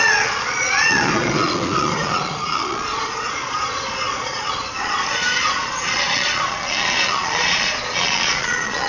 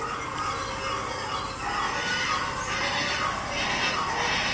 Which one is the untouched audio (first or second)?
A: second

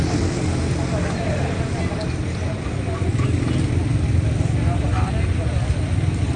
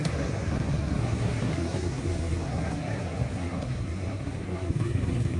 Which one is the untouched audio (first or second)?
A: first